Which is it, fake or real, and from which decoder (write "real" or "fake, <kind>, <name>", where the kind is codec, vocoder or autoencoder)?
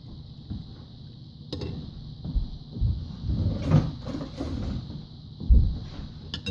real